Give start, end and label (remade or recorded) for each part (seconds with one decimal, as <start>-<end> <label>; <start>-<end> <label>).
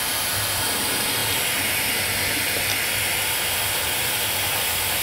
0.0-5.0 recorded